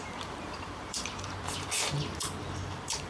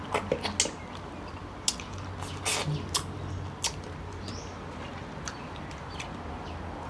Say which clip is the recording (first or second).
second